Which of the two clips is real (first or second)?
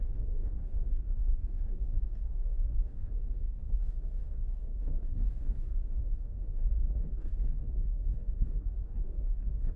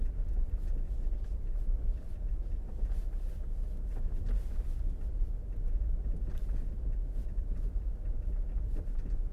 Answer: second